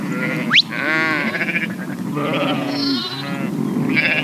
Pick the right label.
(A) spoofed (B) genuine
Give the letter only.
B